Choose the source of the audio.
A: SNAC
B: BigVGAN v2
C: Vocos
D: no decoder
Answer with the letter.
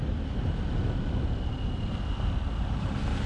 D